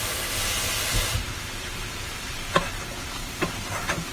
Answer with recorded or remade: remade